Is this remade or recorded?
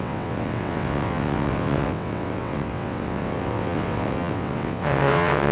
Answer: remade